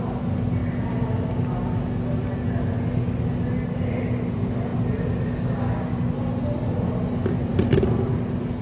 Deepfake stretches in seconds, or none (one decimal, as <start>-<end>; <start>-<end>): none